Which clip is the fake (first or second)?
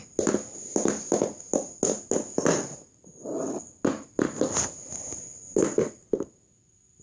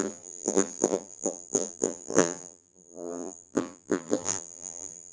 second